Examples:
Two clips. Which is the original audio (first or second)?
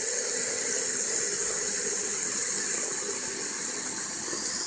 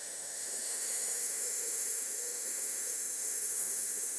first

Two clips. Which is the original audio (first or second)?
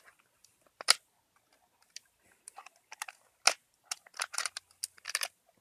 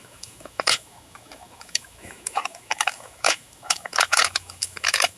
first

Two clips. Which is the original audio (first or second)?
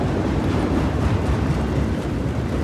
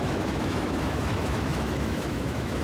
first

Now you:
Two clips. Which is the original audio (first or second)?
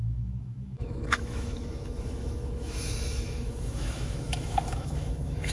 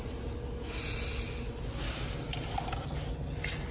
second